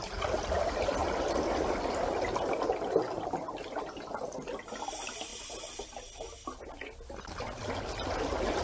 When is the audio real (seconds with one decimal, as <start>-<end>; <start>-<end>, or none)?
0.0-8.6